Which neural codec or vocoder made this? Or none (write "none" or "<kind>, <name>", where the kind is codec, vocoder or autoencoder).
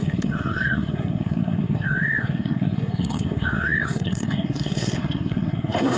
codec, SNAC